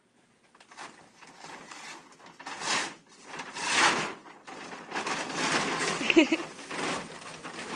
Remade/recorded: recorded